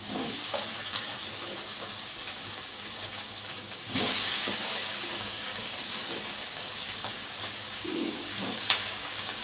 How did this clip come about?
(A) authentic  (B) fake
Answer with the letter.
B